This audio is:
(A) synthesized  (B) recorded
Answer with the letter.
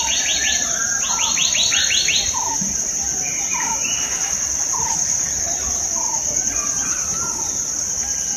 B